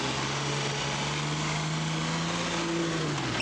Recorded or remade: recorded